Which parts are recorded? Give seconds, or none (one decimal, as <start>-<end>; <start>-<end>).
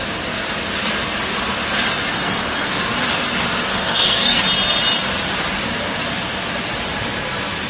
0.0-2.1; 2.7-3.7; 4.4-7.7